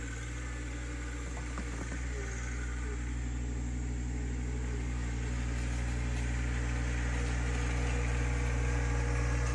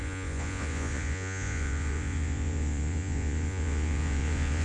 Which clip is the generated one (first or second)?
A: second